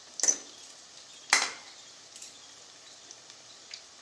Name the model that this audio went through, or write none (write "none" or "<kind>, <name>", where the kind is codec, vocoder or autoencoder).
none